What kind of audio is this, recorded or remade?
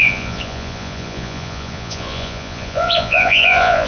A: remade